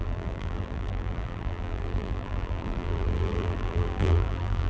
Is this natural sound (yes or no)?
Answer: no